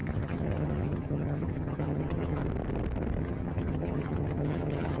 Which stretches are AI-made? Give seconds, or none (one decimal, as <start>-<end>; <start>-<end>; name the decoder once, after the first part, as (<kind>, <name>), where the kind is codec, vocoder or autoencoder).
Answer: 0.0-2.4 (vocoder, HiFi-GAN); 3.2-5.0